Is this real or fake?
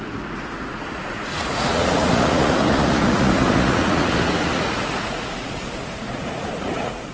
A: fake